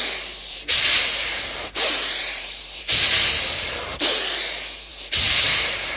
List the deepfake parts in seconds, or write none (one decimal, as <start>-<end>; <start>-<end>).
0.4-4.0; 4.9-6.0